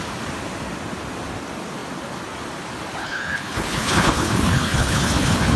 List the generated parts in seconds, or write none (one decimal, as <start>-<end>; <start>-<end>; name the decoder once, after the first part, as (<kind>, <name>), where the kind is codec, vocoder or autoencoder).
3.0-5.6 (codec, HILCodec)